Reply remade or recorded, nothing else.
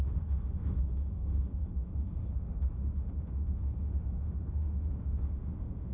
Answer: remade